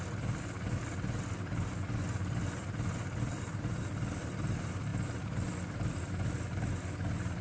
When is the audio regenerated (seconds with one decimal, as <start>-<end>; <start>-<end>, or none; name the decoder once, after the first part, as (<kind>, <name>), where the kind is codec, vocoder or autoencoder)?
none